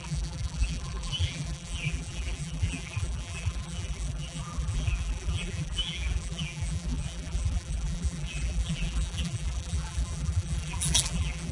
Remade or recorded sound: remade